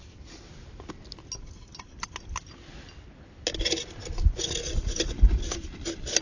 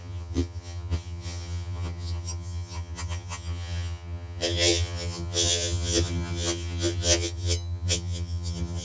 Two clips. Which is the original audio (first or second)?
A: first